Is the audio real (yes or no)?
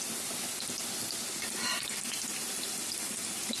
yes